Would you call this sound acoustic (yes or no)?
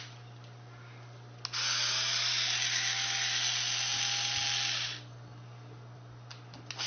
yes